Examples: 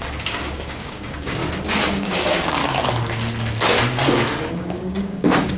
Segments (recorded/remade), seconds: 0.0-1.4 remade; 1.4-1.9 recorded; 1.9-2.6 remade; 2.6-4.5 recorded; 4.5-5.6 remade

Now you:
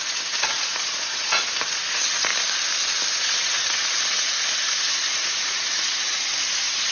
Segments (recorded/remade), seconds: 0.0-2.3 remade; 2.3-3.1 recorded; 3.1-6.9 remade

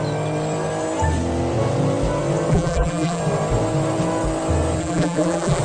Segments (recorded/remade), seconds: 0.0-2.5 recorded; 2.5-3.2 remade; 3.2-4.8 recorded; 4.8-5.6 remade